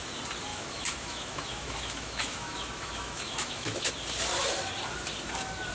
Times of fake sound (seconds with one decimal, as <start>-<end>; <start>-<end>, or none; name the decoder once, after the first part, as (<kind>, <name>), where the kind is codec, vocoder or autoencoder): 0.5-3.9 (autoencoder, DAC-VAE)